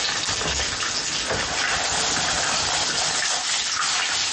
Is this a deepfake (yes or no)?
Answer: no